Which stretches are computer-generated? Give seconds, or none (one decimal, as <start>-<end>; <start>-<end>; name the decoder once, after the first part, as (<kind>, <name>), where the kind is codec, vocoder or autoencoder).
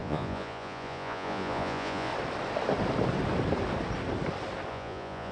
0.0-2.1 (vocoder, Vocos); 4.7-5.3